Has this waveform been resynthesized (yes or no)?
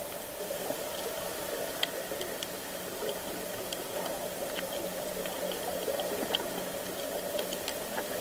no